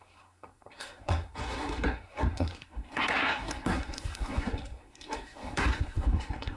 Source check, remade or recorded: remade